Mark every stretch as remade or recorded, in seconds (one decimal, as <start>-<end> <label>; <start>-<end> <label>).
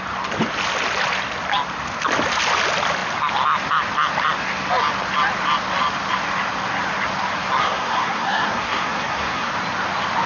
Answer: 0.0-7.6 recorded; 7.6-9.5 remade; 9.5-10.3 recorded